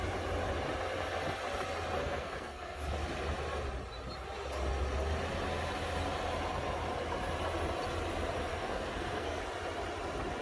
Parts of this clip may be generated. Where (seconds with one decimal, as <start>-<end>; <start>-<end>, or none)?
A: 2.0-2.8; 8.5-9.4